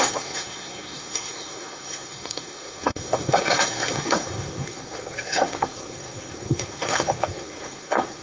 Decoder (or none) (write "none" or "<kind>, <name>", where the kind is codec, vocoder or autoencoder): codec, SNAC